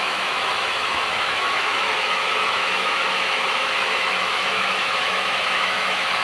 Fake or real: fake